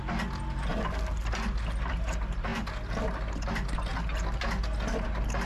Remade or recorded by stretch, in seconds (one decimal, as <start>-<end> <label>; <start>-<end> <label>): 0.0-5.5 recorded